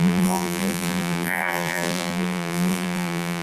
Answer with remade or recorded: remade